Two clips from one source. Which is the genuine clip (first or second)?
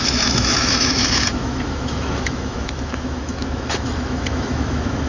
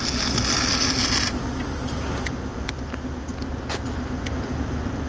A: second